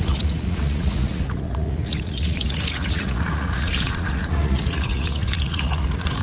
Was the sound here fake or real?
fake